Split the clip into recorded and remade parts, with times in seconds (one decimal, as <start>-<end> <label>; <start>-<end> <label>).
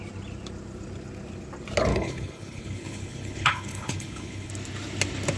0.0-1.9 recorded; 1.9-4.5 remade; 4.5-5.4 recorded